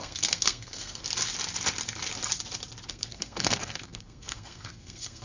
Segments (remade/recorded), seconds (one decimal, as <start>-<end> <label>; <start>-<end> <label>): 0.0-1.0 remade; 1.0-2.9 recorded; 2.9-5.2 remade